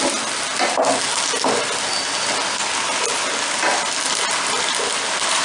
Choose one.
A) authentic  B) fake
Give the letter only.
A